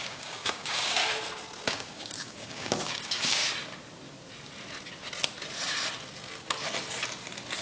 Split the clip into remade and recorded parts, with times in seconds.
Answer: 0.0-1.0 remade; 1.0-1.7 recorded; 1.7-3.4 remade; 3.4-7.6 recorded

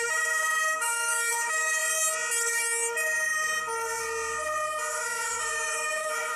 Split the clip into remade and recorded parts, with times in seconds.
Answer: 0.0-1.8 remade; 1.8-4.9 recorded; 4.9-6.4 remade

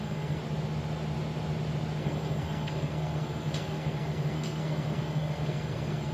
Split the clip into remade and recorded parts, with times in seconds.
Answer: 0.0-0.4 remade; 0.4-2.0 recorded; 2.0-6.1 remade

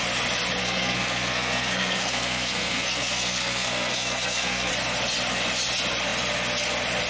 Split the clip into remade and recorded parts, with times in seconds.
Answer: 0.0-0.6 recorded; 0.6-4.7 remade; 4.7-7.1 recorded

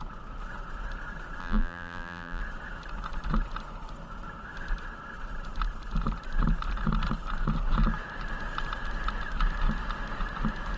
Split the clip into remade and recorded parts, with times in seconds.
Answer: 0.0-1.4 recorded; 1.4-2.4 remade; 2.4-10.8 recorded

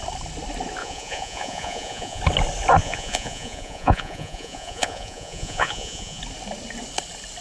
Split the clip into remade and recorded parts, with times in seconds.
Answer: 0.0-0.8 recorded; 0.8-2.2 remade; 2.2-2.8 recorded; 2.8-6.2 remade; 6.2-7.4 recorded

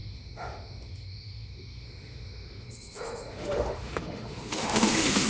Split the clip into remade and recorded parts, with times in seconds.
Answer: 0.0-5.3 remade